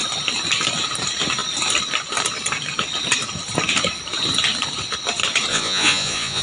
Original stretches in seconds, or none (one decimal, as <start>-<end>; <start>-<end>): 0.0-5.5